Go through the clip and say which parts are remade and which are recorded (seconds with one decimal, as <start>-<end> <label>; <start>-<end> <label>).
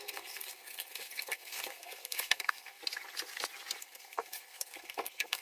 0.0-2.8 remade; 2.8-3.8 recorded; 3.8-5.4 remade